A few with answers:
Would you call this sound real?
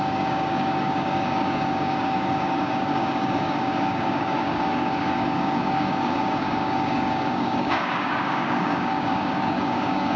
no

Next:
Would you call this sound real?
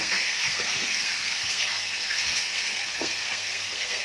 no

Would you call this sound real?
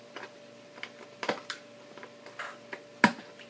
no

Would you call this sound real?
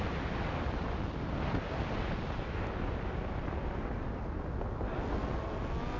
yes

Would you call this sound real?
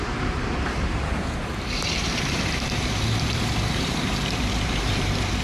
no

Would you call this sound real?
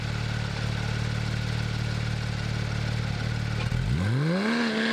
yes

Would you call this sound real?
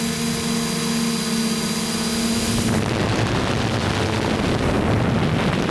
yes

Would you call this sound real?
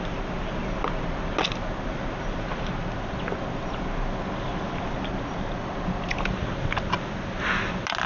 yes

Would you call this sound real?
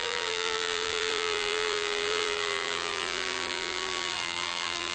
no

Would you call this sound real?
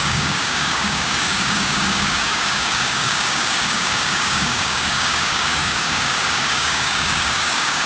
no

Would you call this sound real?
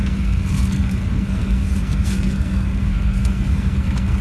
no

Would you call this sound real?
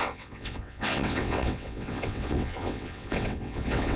no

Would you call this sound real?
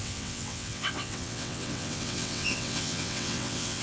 no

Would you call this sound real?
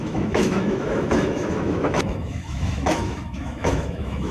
no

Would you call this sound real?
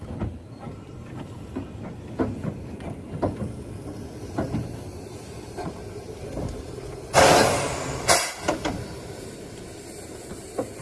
yes